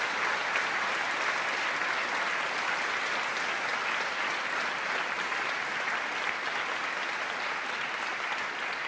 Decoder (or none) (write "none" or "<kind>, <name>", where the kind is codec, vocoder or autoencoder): none